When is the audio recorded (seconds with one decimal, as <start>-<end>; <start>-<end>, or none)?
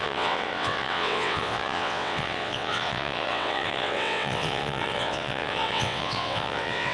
none